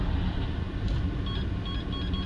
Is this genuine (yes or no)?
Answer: yes